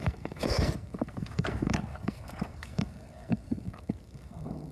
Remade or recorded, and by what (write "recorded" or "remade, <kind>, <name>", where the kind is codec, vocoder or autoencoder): remade, codec, SNAC